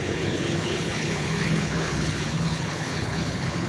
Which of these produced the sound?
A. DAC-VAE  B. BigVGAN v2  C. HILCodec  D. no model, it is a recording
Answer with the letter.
C